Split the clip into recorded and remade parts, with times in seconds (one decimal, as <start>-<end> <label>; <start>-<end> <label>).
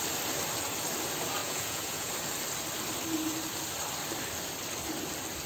0.0-1.4 recorded; 1.4-2.1 remade; 2.1-5.5 recorded